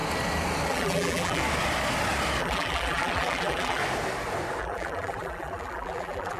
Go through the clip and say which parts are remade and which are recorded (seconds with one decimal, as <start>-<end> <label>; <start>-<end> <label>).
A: 0.0-0.7 recorded; 0.7-1.4 remade; 1.4-2.4 recorded; 2.4-3.8 remade; 3.8-4.6 recorded; 4.6-6.4 remade